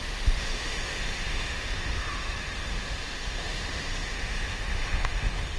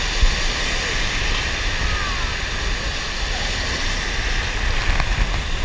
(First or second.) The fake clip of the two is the first